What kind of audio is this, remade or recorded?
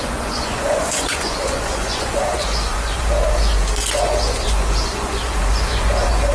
remade